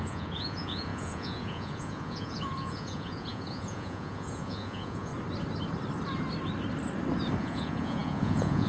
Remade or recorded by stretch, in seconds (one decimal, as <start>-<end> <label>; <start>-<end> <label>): 0.0-5.1 remade; 5.1-7.4 recorded; 7.4-8.7 remade